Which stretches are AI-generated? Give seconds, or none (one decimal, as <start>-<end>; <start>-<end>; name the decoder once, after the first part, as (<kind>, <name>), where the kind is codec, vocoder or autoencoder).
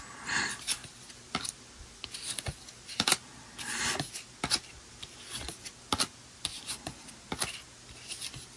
6.5-7.1 (vocoder, Vocos)